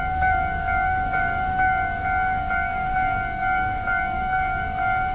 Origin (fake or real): fake